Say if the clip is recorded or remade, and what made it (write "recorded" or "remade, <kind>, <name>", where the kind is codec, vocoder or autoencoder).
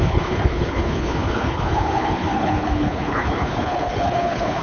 remade, codec, HILCodec